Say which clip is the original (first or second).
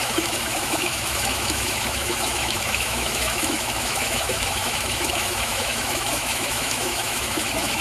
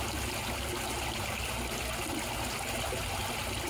second